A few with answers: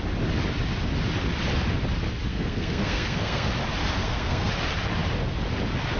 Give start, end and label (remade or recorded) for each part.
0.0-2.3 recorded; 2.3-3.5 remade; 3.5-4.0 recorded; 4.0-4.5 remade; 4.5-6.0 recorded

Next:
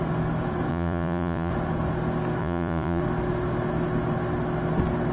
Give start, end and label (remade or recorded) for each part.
0.0-0.7 recorded; 0.7-1.5 remade; 1.5-2.4 recorded; 2.4-3.0 remade; 3.0-5.1 recorded

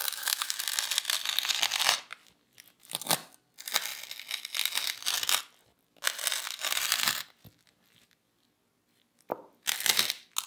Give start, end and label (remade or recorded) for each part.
0.0-0.6 remade; 0.6-10.5 recorded

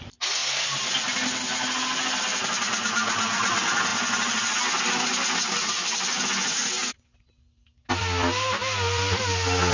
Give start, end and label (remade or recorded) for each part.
0.0-9.7 recorded